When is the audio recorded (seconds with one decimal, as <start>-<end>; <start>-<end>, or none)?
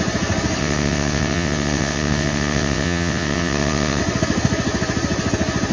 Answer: 0.0-0.6; 4.0-5.7